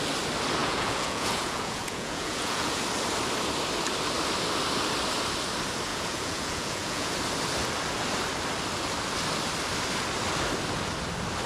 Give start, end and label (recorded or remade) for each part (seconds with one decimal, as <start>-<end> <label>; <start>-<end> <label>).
0.0-0.6 recorded; 0.6-2.8 remade; 2.8-5.9 recorded; 5.9-7.1 remade; 7.1-11.5 recorded